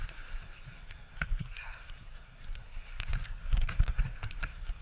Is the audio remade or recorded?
remade